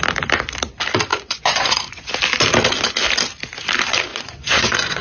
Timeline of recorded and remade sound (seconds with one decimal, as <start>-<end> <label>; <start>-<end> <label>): 0.0-1.1 recorded; 1.1-2.1 remade; 2.1-4.1 recorded; 4.1-5.0 remade